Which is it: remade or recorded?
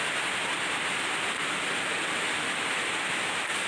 recorded